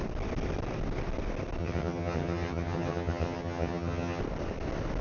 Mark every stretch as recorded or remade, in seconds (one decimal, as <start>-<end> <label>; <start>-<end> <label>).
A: 0.0-1.6 recorded; 1.6-4.2 remade; 4.2-5.0 recorded